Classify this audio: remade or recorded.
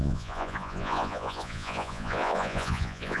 remade